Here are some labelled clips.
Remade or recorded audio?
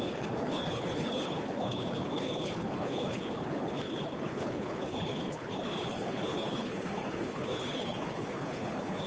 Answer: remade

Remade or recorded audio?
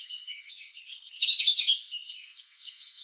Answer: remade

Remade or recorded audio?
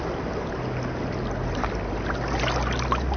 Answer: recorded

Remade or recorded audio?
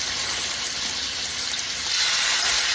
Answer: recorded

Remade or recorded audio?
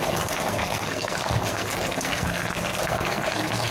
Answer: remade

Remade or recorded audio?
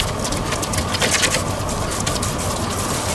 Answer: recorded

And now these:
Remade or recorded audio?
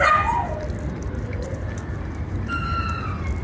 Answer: recorded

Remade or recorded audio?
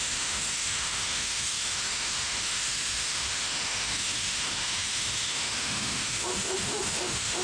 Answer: remade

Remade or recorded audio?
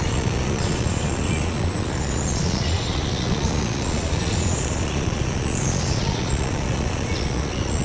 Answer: remade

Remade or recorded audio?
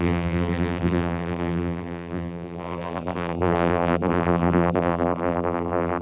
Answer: remade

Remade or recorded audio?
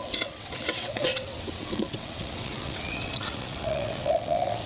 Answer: remade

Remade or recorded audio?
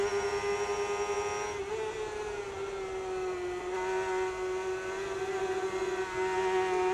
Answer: recorded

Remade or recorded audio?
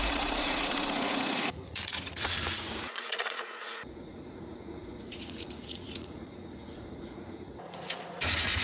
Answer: remade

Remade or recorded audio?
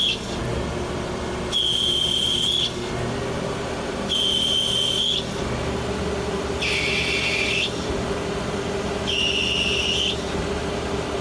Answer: recorded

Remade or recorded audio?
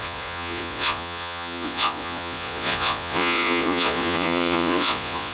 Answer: remade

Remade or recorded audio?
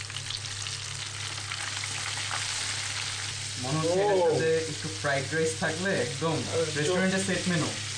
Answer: recorded